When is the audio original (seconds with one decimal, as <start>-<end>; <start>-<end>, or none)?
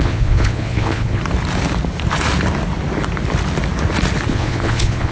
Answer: 1.2-4.3